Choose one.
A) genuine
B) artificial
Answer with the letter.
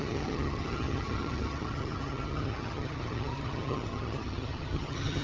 B